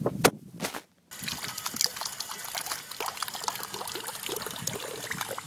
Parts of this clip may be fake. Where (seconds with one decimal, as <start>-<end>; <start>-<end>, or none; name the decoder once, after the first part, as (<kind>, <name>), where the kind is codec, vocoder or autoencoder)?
none